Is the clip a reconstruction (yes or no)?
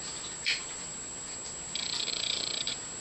no